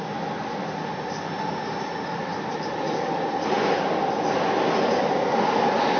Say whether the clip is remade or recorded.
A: recorded